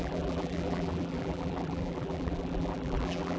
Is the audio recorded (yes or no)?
no